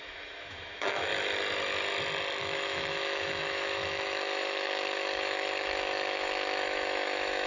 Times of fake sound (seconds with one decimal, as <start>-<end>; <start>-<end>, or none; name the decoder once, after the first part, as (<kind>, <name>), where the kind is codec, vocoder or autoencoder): 0.0-1.1 (autoencoder, DAC-VAE); 2.4-7.5